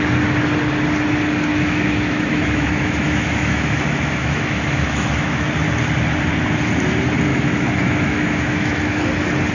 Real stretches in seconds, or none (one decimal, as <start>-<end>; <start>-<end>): 0.0-1.5; 5.5-7.3; 9.0-9.5